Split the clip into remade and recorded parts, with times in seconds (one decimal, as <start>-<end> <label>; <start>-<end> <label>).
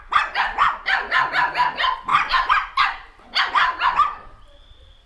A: 0.0-5.1 remade